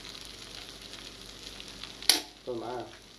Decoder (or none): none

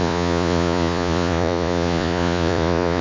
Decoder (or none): vocoder, Vocos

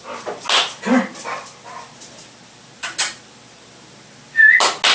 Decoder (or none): none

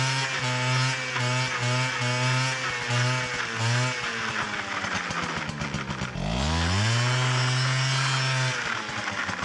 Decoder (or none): none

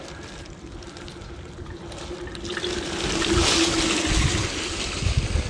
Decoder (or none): none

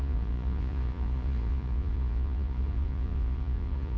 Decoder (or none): vocoder, Vocos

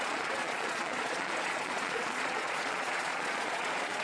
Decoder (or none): vocoder, Vocos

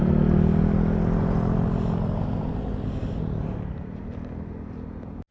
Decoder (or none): none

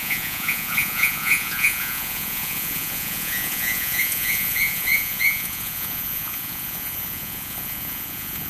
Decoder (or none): vocoder, Vocos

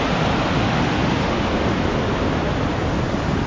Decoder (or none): none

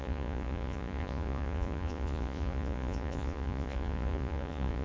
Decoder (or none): vocoder, Vocos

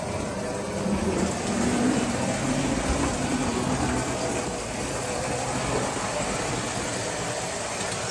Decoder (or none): none